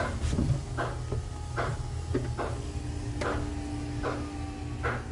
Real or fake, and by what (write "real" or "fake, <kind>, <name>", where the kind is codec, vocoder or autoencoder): real